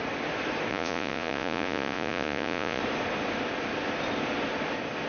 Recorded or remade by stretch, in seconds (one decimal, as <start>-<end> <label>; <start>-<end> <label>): 0.0-0.7 recorded; 0.7-2.8 remade; 2.8-5.1 recorded